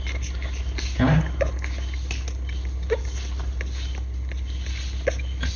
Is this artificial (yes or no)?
no